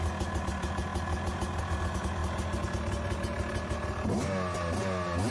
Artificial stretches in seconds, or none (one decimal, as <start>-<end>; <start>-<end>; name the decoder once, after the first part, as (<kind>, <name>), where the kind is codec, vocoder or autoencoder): none